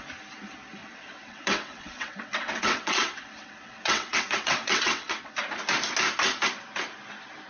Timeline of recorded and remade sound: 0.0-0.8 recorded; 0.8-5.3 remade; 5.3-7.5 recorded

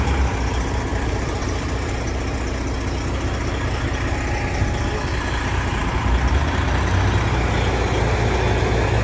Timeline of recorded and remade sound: 0.0-0.9 recorded; 0.9-1.9 remade; 1.9-9.0 recorded

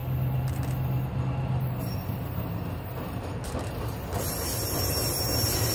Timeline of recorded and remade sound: 0.0-5.7 recorded

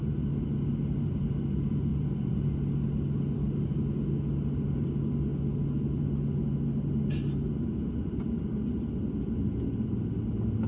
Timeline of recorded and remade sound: 0.0-1.9 recorded; 1.9-2.4 remade; 2.4-10.7 recorded